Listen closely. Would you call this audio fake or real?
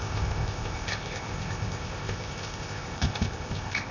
fake